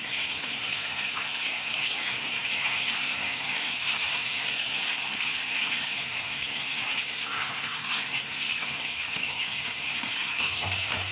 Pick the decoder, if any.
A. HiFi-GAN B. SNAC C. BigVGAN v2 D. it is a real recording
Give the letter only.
B